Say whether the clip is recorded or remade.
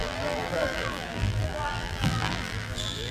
remade